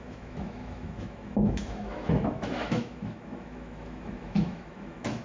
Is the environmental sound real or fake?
fake